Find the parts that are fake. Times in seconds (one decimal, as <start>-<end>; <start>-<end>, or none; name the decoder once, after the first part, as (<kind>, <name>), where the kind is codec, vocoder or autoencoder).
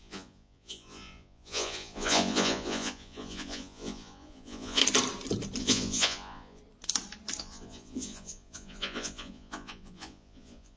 0.0-4.8 (vocoder, Vocos); 5.6-6.6; 7.4-10.8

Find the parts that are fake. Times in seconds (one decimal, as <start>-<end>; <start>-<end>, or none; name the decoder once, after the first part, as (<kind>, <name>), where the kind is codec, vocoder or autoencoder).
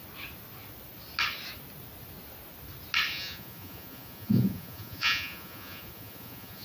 3.1-6.6 (vocoder, Vocos)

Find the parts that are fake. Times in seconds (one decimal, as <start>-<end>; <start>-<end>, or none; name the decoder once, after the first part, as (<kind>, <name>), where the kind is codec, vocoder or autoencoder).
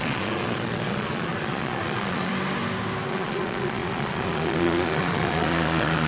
0.0-2.3 (vocoder, Vocos); 3.1-6.1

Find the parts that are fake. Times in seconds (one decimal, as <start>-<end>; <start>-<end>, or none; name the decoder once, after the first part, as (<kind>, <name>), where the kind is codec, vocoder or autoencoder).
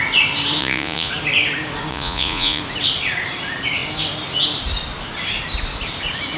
0.6-1.1 (vocoder, Vocos); 1.9-2.6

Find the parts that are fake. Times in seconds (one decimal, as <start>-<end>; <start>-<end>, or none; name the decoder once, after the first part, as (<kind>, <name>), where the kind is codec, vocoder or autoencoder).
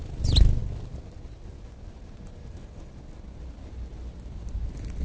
none